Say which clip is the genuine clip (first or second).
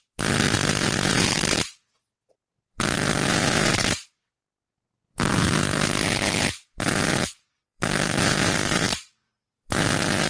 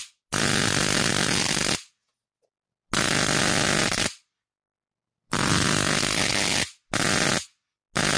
second